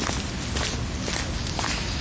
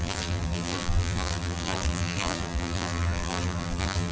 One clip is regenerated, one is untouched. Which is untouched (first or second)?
first